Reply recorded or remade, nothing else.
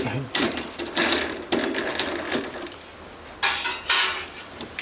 recorded